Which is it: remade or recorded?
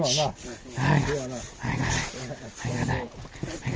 recorded